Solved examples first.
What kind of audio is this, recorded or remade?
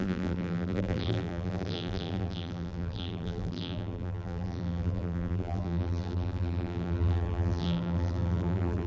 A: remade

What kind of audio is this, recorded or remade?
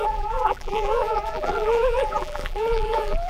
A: remade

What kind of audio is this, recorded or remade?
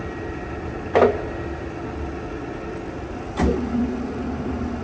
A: recorded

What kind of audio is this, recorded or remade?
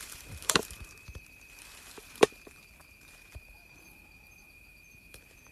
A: remade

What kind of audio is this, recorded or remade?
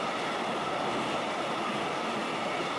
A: remade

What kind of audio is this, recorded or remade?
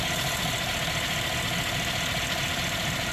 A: recorded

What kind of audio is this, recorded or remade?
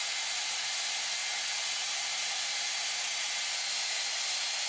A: recorded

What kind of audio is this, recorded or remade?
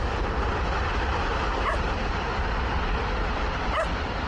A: remade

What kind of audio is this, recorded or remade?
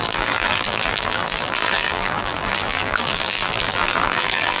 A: remade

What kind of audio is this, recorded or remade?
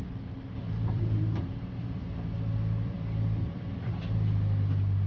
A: remade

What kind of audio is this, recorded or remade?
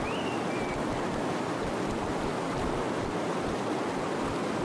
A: recorded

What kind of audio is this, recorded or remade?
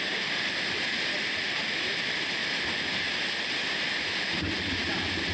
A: remade